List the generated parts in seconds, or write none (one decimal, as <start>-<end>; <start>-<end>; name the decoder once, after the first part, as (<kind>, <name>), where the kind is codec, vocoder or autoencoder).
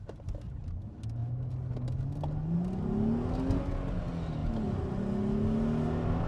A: none